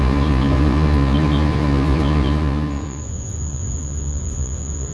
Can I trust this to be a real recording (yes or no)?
no